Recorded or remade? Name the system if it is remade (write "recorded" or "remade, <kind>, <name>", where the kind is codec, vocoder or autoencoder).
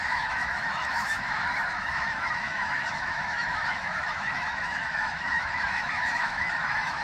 remade, autoencoder, DAC-VAE